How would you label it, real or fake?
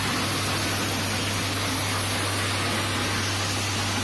real